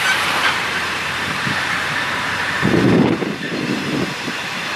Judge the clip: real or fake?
fake